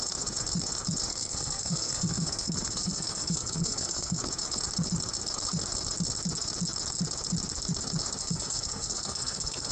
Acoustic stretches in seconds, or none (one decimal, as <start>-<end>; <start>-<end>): 0.0-1.1; 4.2-8.2